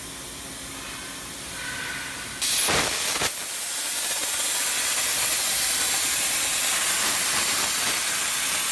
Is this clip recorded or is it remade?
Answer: recorded